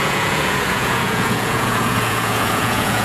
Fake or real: fake